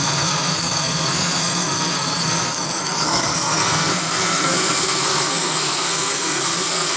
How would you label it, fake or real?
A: fake